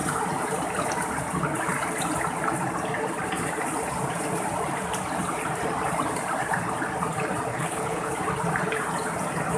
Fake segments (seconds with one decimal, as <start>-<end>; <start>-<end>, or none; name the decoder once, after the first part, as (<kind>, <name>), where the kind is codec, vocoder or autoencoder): 7.5-8.1 (codec, HILCodec)

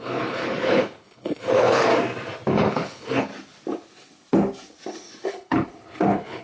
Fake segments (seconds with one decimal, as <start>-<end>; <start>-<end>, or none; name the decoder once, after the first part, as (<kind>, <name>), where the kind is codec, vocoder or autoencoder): 0.0-1.9 (codec, HILCodec); 2.5-3.3; 5.3-6.4

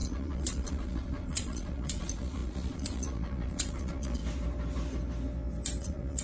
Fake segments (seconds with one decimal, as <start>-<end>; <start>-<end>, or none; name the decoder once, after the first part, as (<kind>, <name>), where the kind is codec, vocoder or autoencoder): 0.0-4.2 (vocoder, Vocos); 5.8-6.2